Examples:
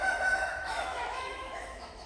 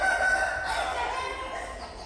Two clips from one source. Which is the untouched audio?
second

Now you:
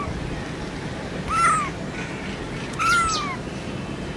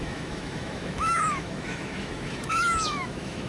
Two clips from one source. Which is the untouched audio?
first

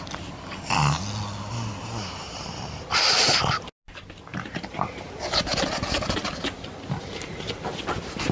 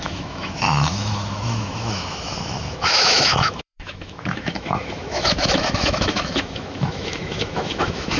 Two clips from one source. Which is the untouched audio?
first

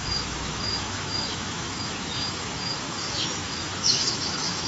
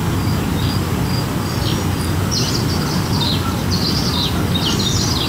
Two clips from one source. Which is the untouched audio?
second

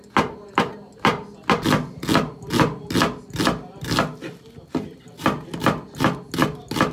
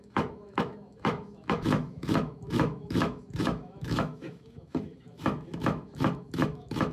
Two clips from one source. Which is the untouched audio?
first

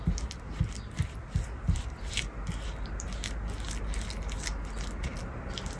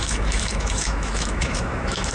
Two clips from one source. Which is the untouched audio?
first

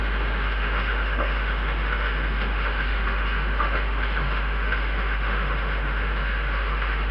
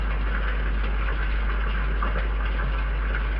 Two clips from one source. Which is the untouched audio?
second